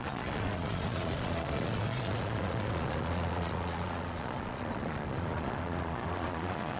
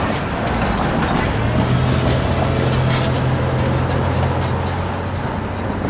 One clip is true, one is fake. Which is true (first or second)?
second